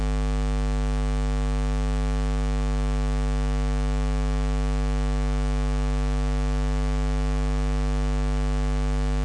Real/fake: real